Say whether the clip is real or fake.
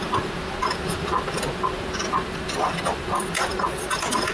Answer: real